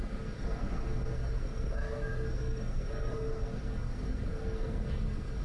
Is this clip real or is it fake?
fake